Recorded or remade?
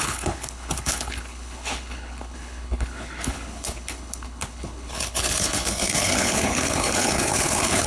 remade